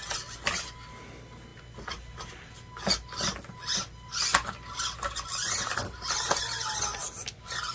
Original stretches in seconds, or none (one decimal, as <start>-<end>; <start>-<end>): 0.0-7.7